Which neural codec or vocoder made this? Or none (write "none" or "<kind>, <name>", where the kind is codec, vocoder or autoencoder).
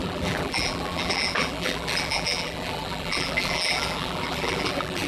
vocoder, BigVGAN v2